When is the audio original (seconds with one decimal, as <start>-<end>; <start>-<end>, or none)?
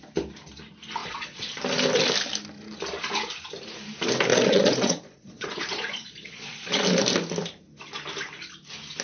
0.0-1.0; 1.6-4.3; 6.8-9.0